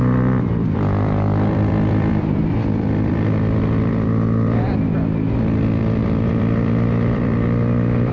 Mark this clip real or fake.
fake